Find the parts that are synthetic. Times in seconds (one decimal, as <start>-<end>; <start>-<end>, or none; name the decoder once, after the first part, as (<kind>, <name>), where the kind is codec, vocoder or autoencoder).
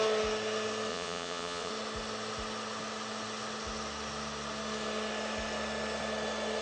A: 0.9-1.7 (vocoder, Vocos)